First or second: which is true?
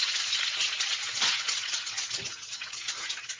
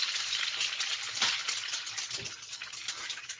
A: second